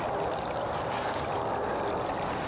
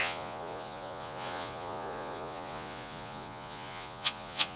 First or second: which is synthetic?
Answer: second